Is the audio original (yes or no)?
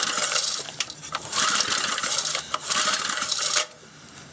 no